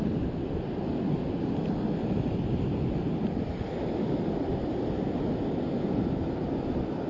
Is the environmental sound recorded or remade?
recorded